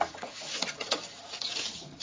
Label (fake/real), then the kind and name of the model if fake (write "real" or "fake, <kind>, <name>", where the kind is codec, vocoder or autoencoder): fake, vocoder, Vocos